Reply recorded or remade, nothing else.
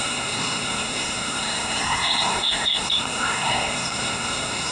remade